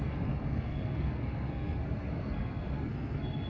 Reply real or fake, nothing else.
fake